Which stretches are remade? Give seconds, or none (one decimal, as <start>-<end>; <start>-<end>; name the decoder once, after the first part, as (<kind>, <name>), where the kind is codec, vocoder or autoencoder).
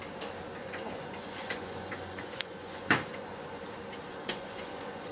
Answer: 0.6-3.6 (vocoder, Vocos); 4.1-5.1